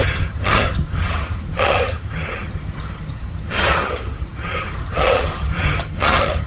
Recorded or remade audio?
remade